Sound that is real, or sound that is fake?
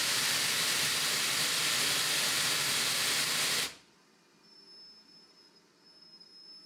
real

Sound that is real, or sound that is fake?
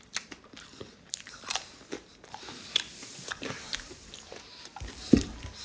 fake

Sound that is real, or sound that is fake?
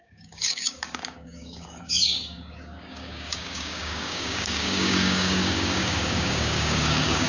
fake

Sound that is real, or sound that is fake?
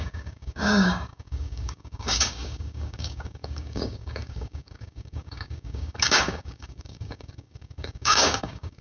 fake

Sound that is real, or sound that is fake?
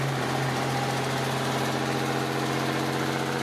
real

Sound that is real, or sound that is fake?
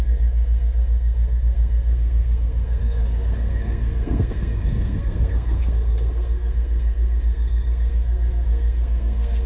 fake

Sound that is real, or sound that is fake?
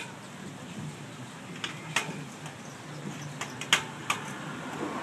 real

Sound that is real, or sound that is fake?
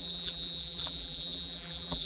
fake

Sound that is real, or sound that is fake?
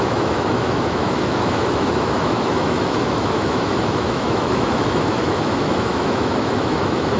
fake